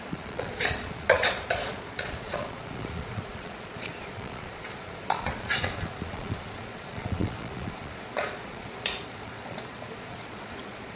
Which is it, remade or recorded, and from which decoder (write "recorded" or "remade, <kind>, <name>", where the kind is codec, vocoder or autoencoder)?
remade, vocoder, Vocos